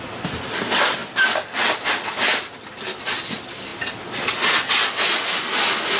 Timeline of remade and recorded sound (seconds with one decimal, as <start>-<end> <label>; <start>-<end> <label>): 0.0-6.0 recorded